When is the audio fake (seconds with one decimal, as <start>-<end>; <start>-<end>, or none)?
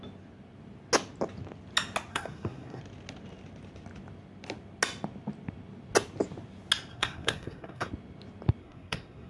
2.1-2.8; 6.9-7.9; 8.6-9.3